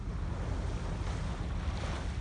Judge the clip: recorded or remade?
recorded